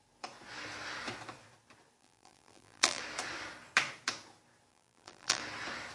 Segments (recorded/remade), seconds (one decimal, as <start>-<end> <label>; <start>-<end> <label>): 0.0-2.0 recorded; 2.0-3.0 remade; 3.0-4.7 recorded; 4.7-5.4 remade; 5.4-5.9 recorded